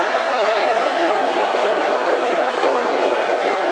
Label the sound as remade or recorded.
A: remade